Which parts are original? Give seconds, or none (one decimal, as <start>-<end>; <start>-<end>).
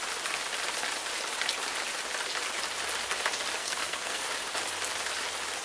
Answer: 0.0-3.6; 4.3-5.6